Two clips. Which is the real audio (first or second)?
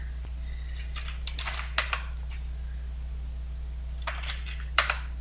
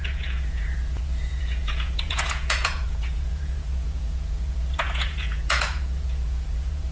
first